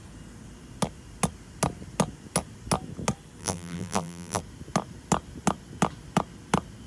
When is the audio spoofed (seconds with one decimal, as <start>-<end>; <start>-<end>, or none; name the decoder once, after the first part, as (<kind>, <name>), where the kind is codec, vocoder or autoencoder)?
3.4-4.4 (vocoder, BigVGAN v2)